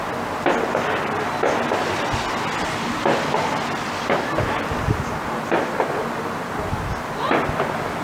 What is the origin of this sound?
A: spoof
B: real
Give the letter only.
B